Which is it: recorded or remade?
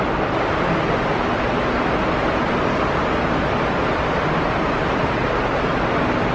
recorded